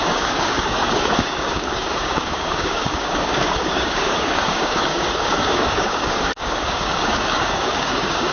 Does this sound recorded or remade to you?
remade